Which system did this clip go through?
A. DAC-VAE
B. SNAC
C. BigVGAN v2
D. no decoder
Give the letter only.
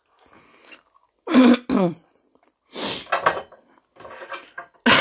D